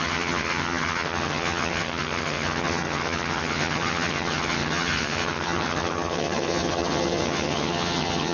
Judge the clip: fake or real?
fake